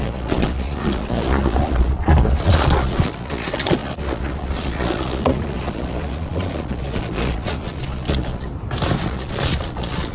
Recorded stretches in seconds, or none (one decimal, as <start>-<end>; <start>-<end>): 8.5-9.0